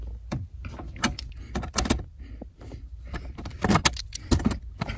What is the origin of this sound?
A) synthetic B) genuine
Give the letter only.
B